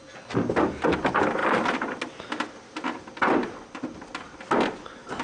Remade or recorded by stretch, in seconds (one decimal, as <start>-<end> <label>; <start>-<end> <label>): 0.0-5.2 recorded